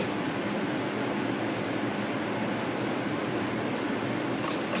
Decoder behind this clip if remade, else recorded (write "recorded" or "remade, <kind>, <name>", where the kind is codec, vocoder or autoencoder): recorded